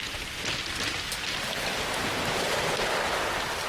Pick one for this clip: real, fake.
fake